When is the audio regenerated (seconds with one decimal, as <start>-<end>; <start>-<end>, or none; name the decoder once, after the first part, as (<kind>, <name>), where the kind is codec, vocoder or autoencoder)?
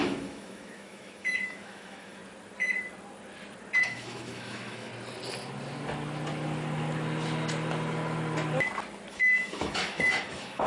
0.0-2.2 (autoencoder, DAC-VAE); 3.8-4.9; 9.1-10.7